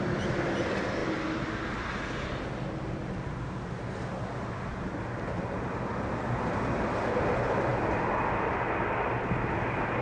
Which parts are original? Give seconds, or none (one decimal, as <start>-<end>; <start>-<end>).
0.0-10.0